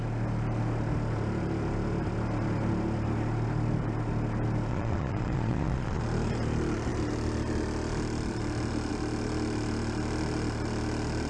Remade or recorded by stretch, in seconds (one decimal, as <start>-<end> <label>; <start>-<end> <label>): 0.0-4.7 recorded; 4.7-6.0 remade; 6.0-11.3 recorded